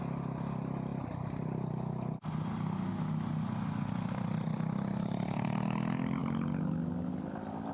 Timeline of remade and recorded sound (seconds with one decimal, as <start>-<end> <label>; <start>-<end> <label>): 0.0-7.7 recorded